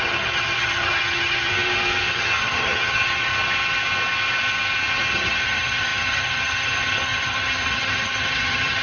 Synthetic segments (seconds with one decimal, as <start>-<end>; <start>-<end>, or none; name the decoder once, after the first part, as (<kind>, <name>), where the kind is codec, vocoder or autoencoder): 0.0-1.5 (vocoder, HiFi-GAN); 2.1-3.3; 4.8-8.8